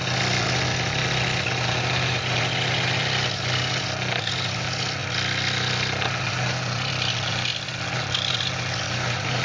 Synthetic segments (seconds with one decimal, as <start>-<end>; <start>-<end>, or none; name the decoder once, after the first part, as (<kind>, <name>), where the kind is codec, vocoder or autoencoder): none